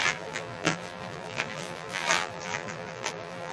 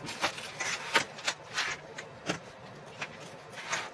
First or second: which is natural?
second